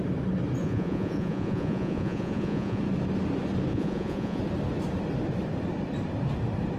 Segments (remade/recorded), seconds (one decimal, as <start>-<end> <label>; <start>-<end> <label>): 0.0-0.6 recorded; 0.6-2.8 remade; 2.8-3.7 recorded; 3.7-4.4 remade; 4.4-6.8 recorded